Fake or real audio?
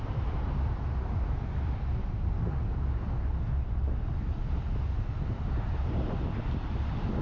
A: real